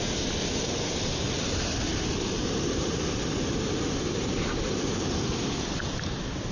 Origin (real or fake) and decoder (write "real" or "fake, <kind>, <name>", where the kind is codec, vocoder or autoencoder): fake, vocoder, BigVGAN v2